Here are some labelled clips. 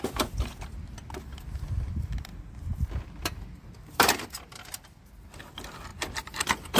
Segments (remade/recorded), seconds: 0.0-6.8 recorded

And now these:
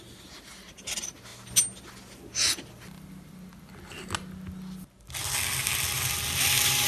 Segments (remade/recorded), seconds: 0.0-6.9 recorded